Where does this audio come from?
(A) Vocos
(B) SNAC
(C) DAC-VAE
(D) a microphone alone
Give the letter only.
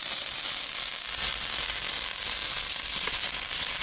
D